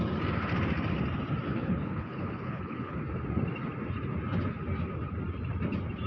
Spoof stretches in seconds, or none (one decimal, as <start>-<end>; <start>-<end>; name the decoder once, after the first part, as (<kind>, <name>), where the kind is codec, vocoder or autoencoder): 1.5-3.0 (codec, HILCodec)